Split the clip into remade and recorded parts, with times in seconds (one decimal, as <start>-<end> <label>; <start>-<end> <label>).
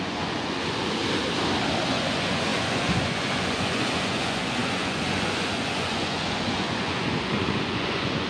0.0-1.0 remade; 1.0-1.9 recorded; 1.9-8.3 remade